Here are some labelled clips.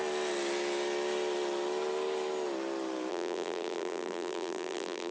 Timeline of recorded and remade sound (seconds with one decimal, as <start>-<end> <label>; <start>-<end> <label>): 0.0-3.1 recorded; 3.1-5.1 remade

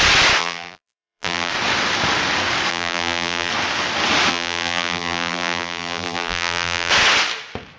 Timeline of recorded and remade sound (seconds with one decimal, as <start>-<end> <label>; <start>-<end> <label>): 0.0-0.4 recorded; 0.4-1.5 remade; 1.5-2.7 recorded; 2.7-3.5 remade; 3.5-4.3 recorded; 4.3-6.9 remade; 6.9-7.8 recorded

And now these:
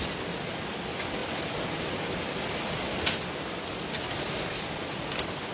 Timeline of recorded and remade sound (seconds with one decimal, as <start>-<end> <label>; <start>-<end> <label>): 0.0-5.5 recorded

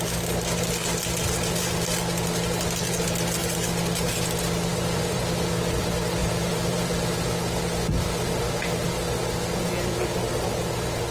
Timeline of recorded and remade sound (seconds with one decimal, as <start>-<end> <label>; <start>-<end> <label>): 0.0-4.7 recorded; 4.7-5.2 remade; 5.2-6.2 recorded; 6.2-7.2 remade; 7.2-11.1 recorded

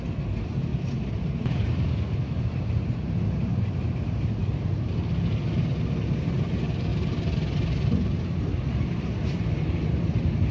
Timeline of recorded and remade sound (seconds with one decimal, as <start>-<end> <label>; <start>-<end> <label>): 0.0-0.7 recorded; 0.7-4.9 remade; 4.9-6.9 recorded; 6.9-9.1 remade; 9.1-10.5 recorded

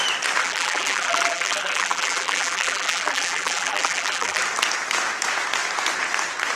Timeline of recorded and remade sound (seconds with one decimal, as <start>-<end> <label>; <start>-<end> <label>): 0.0-0.4 recorded; 0.4-4.4 remade; 4.4-6.6 recorded

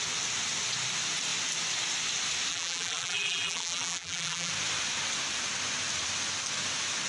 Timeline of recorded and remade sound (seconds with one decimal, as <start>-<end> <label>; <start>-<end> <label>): 0.0-2.5 recorded; 2.5-4.5 remade; 4.5-7.1 recorded